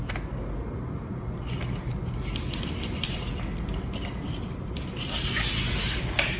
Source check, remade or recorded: recorded